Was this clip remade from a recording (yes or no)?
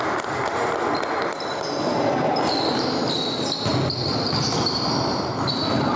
no